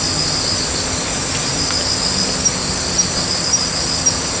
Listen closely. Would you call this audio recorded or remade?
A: recorded